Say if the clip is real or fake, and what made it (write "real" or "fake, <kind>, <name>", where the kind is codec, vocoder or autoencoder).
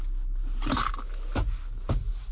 real